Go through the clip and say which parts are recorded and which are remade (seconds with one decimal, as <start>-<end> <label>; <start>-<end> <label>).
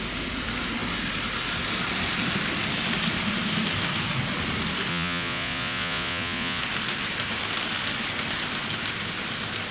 0.0-4.9 recorded; 4.9-6.6 remade; 6.6-9.7 recorded